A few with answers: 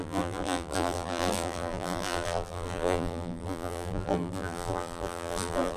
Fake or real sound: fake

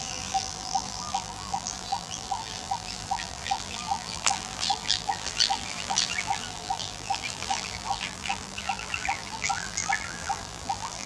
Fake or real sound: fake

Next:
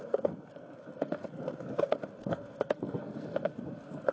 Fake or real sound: fake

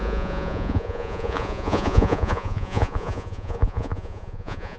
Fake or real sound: fake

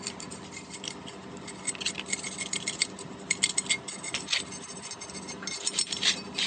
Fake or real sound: real